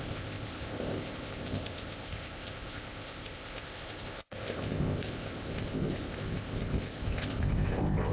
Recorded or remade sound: remade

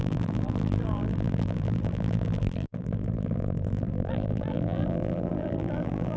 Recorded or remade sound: remade